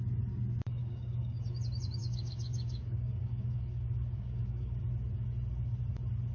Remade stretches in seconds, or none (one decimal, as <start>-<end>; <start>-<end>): 0.8-1.5; 2.0-4.8